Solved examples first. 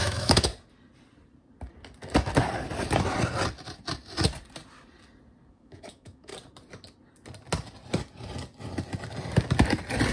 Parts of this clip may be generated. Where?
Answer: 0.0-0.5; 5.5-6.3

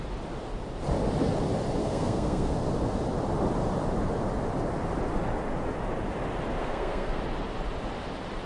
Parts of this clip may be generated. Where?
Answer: 1.8-2.5; 6.6-7.2

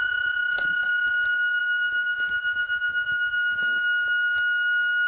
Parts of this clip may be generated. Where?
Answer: none

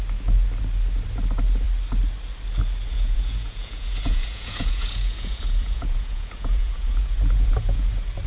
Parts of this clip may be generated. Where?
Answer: 2.9-7.9

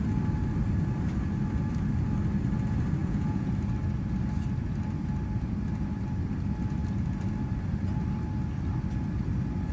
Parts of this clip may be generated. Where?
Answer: 3.0-3.5

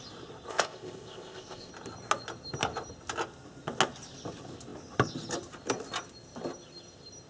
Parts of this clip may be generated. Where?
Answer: 0.5-1.7

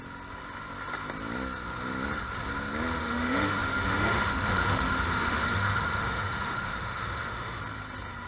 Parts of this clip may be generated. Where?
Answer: 3.0-7.6